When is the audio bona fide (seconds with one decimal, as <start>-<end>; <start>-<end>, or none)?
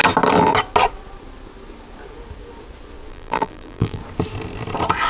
0.0-3.1; 4.0-5.1